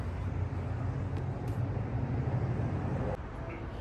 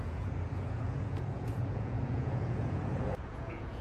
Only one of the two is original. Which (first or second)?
first